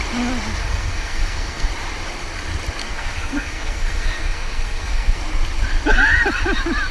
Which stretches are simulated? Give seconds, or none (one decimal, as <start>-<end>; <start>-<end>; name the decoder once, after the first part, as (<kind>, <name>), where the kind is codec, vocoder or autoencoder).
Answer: 0.6-1.7 (codec, SNAC); 2.8-5.2